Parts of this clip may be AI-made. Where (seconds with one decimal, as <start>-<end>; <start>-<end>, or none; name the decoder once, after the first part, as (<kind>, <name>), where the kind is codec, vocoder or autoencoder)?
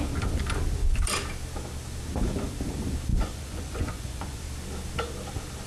3.1-4.4 (vocoder, Vocos)